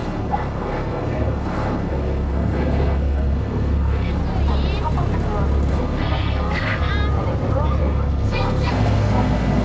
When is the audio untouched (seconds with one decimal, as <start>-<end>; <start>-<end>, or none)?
4.2-5.7; 6.9-7.8